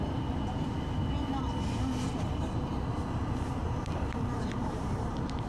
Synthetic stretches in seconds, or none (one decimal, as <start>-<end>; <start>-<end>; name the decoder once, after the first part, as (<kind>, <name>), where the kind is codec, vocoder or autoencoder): 3.6-5.5 (vocoder, BigVGAN v2)